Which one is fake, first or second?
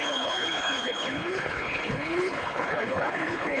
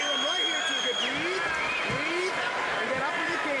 first